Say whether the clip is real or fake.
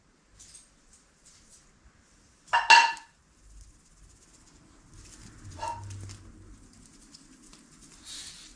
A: real